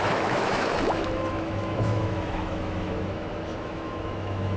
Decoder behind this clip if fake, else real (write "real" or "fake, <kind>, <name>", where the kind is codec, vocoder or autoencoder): fake, autoencoder, DAC-VAE